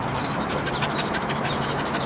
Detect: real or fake fake